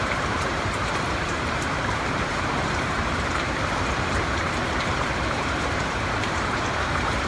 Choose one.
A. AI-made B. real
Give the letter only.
A